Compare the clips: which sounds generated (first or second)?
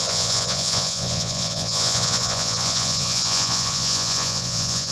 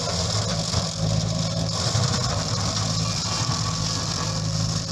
first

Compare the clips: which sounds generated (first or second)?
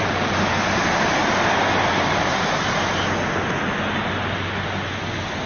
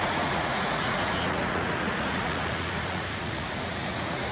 second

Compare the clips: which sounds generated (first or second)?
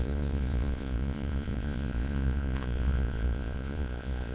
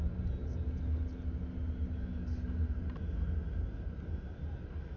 first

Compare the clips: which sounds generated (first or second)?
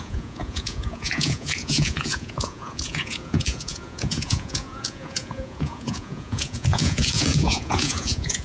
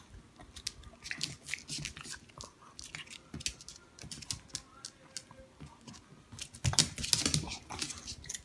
first